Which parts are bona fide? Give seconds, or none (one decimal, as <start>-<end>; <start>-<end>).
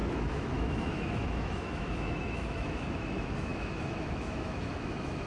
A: none